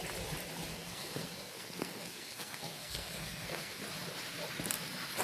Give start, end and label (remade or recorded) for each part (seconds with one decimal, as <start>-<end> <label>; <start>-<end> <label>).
0.0-0.7 recorded; 0.7-3.8 remade; 3.8-5.2 recorded

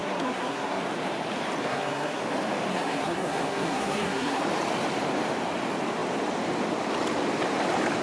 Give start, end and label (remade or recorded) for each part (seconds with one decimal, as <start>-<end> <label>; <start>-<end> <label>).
0.0-0.8 remade; 0.8-1.6 recorded; 1.6-2.2 remade; 2.2-2.7 recorded; 2.7-4.4 remade; 4.4-8.0 recorded

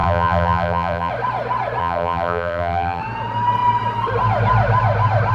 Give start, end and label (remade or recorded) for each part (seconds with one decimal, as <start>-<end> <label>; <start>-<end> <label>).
0.0-1.1 remade; 1.1-1.8 recorded; 1.8-3.0 remade; 3.0-5.3 recorded

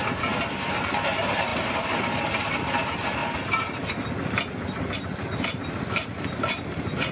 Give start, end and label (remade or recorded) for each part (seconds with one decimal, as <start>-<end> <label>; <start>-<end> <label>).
0.0-7.1 recorded

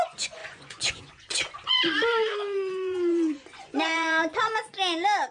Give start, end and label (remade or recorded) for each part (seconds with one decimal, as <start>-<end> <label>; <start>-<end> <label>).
0.0-5.3 remade

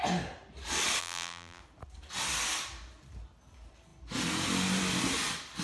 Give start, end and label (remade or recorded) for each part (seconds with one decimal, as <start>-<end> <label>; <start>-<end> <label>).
0.0-1.0 recorded; 1.0-1.6 remade; 1.6-5.6 recorded